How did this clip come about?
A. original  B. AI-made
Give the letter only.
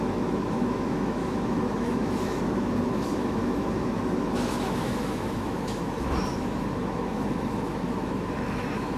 B